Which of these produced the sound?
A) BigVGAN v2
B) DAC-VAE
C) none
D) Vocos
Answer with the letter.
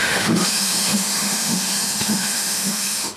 B